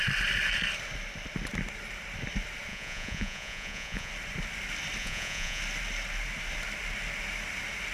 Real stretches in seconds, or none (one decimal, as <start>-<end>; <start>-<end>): 0.0-2.7; 4.1-5.0; 5.6-7.9